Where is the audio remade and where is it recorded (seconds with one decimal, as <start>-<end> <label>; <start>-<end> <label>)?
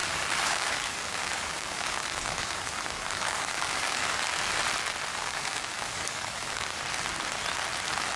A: 0.0-4.4 remade; 4.4-5.1 recorded; 5.1-6.8 remade; 6.8-8.2 recorded